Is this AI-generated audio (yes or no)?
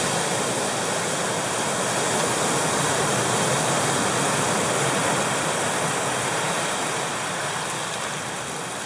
no